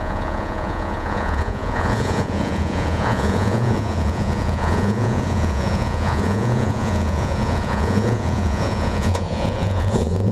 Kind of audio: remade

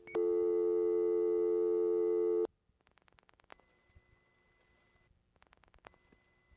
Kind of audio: recorded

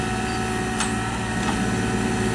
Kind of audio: recorded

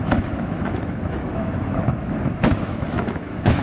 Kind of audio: remade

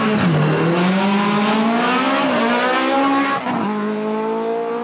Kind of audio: recorded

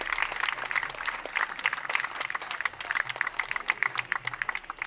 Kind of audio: recorded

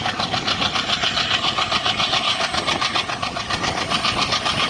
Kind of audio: recorded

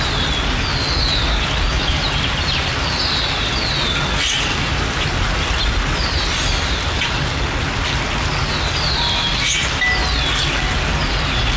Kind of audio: recorded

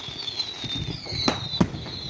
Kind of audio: recorded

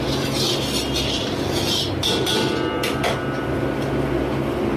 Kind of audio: recorded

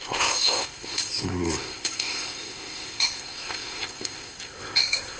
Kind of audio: remade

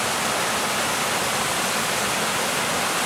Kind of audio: recorded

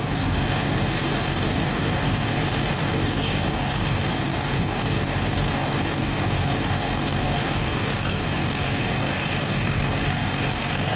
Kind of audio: remade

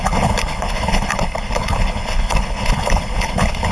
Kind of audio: remade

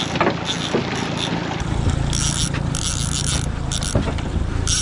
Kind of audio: recorded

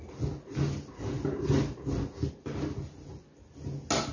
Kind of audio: recorded